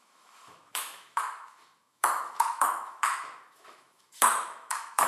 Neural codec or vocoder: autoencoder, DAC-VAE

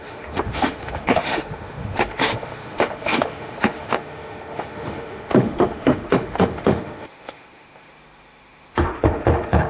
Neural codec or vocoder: autoencoder, DAC-VAE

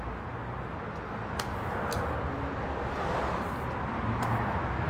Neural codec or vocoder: none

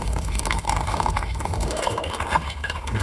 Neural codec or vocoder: autoencoder, DAC-VAE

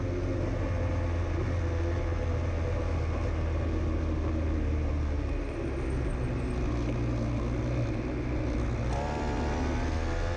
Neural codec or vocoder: none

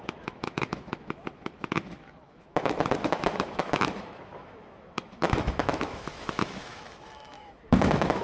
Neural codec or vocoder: autoencoder, DAC-VAE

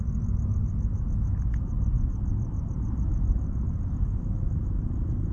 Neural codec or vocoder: none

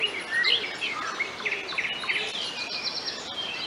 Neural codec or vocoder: none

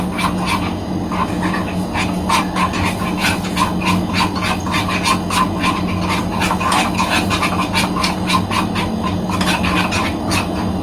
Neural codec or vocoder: none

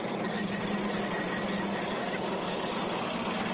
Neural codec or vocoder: none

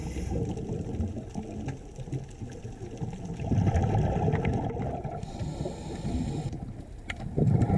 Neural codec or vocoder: none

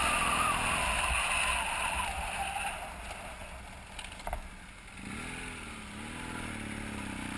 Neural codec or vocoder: none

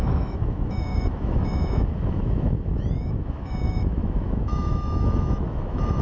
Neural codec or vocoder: autoencoder, DAC-VAE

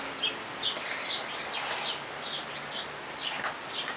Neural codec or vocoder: none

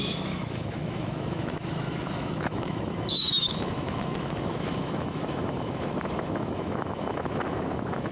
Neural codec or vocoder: autoencoder, DAC-VAE